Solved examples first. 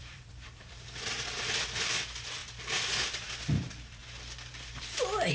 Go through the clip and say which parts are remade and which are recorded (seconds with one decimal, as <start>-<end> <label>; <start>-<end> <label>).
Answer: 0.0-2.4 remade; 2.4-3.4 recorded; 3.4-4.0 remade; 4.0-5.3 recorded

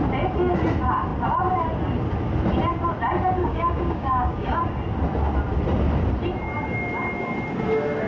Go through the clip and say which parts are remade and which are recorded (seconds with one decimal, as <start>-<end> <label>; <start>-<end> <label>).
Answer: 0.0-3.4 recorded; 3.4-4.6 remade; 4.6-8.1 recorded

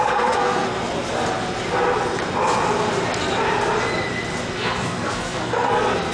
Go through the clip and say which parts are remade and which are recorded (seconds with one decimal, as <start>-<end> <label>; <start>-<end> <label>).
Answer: 0.0-0.8 remade; 0.8-4.5 recorded; 4.5-6.1 remade

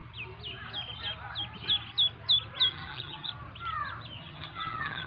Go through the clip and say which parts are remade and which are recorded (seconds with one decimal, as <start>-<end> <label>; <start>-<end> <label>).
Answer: 0.0-2.7 recorded; 2.7-3.3 remade; 3.3-4.2 recorded; 4.2-5.1 remade

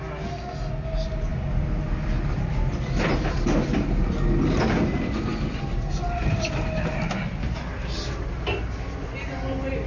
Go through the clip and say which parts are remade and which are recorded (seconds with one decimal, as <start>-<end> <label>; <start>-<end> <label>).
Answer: 0.0-9.9 recorded